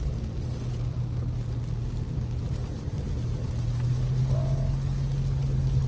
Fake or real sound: real